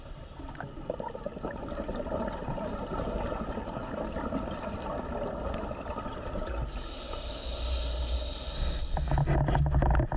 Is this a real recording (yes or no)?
yes